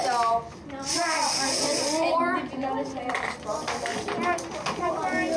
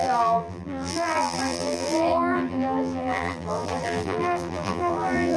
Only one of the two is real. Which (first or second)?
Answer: first